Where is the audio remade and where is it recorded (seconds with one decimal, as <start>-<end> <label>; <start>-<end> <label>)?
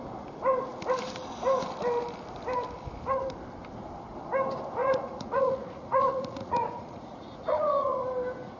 0.0-4.8 recorded; 4.8-8.0 remade; 8.0-8.6 recorded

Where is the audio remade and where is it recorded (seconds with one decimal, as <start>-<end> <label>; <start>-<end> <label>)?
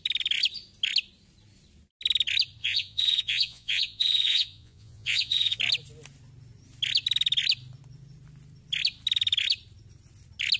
0.0-2.6 recorded; 2.6-5.6 remade; 5.6-10.6 recorded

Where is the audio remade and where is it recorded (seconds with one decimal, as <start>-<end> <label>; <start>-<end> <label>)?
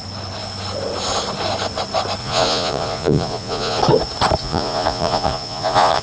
0.0-2.2 recorded; 2.2-3.8 remade; 3.8-4.4 recorded; 4.4-6.0 remade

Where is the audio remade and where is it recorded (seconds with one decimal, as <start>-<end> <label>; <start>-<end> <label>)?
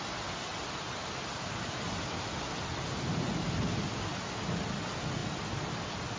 0.0-6.2 recorded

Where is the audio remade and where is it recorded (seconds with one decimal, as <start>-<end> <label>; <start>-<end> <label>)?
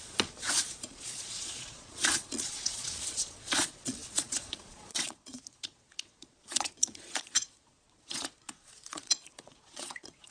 0.0-10.3 remade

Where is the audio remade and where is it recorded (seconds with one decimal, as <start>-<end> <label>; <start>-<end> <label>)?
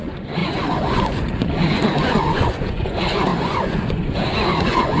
0.0-5.0 remade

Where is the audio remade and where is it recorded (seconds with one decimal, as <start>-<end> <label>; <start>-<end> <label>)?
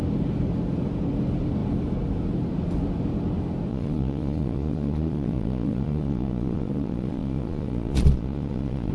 0.0-3.7 recorded; 3.7-8.9 remade